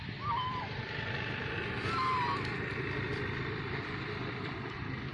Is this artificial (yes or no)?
yes